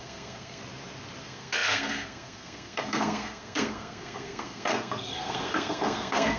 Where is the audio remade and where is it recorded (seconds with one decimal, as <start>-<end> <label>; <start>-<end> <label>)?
0.0-0.6 remade; 0.6-1.2 recorded; 1.2-6.4 remade